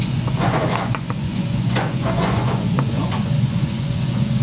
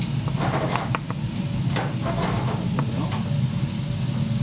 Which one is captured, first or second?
second